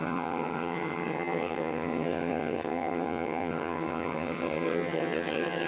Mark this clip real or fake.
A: fake